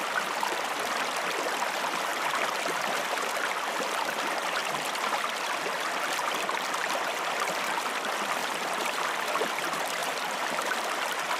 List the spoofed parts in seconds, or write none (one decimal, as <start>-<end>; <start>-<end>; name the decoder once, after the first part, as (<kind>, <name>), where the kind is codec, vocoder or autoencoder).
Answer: 8.4-9.0 (vocoder, BigVGAN v2); 10.0-10.8